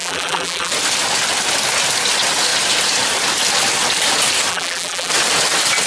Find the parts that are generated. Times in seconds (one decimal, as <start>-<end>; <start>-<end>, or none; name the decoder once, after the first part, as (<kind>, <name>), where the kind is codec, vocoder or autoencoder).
0.0-0.7 (vocoder, BigVGAN v2); 4.5-5.1